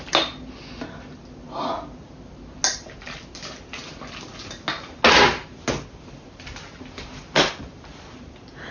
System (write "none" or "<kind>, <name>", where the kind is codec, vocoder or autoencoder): none